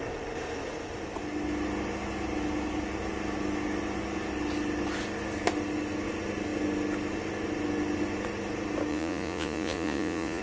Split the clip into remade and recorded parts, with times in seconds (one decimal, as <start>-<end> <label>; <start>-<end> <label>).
0.0-8.9 recorded; 8.9-10.4 remade